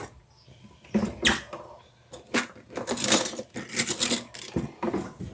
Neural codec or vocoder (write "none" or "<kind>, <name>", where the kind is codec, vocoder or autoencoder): none